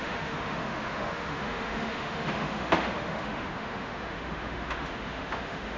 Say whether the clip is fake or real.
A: fake